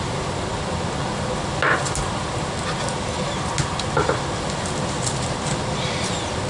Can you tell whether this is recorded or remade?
recorded